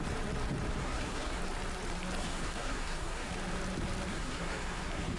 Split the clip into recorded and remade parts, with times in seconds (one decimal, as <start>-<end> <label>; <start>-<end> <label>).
0.0-0.8 recorded; 0.8-1.4 remade; 1.4-2.2 recorded; 2.2-3.3 remade; 3.3-4.1 recorded; 4.1-5.2 remade

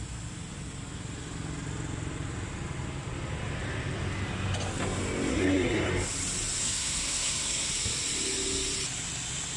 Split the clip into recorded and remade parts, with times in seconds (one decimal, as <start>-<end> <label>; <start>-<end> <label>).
0.0-5.3 recorded; 5.3-5.9 remade; 5.9-6.6 recorded; 6.6-7.7 remade; 7.7-9.6 recorded

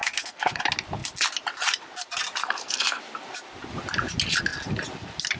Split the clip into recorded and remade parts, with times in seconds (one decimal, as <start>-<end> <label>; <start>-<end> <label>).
0.0-0.6 remade; 0.6-2.4 recorded; 2.4-3.0 remade; 3.0-5.4 recorded